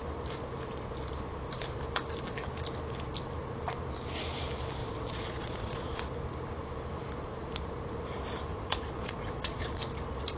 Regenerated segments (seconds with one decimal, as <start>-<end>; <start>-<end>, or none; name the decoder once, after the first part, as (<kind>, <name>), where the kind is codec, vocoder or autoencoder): 4.8-6.0 (vocoder, Vocos); 8.5-9.8